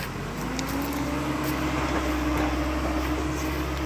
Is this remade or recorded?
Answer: recorded